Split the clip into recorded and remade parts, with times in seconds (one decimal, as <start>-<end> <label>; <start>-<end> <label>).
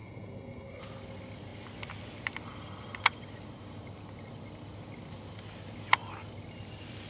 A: 0.0-0.8 remade; 0.8-7.1 recorded